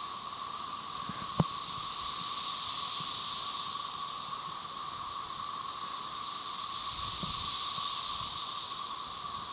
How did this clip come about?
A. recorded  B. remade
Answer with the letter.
A